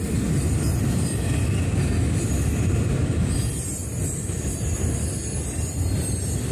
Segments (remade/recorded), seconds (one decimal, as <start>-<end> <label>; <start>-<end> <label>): 0.0-6.5 recorded